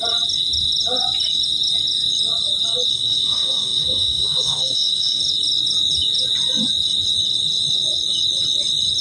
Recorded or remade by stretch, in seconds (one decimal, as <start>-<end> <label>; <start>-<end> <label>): 0.0-2.9 recorded; 2.9-5.2 remade; 5.2-9.0 recorded